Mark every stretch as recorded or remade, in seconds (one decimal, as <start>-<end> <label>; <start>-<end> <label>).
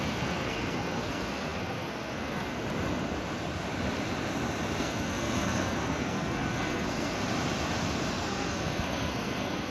0.0-2.5 remade; 2.5-4.8 recorded; 4.8-7.2 remade; 7.2-8.1 recorded; 8.1-9.7 remade